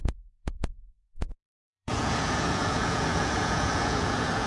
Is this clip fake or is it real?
fake